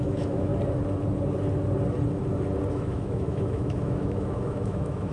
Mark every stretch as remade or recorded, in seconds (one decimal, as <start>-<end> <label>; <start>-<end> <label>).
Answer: 0.0-0.5 remade; 0.5-2.7 recorded; 2.7-5.1 remade